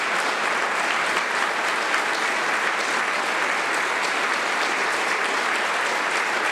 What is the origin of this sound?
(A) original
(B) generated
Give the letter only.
A